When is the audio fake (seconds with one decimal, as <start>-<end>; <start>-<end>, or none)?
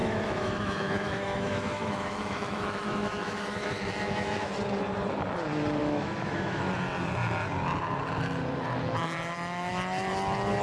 0.0-4.5; 5.8-6.7